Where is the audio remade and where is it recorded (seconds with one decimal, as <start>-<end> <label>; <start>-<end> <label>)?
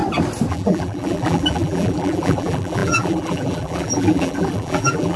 0.0-0.5 recorded; 0.5-5.2 remade